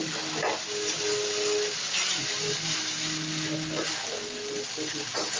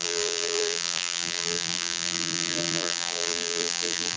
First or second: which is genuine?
first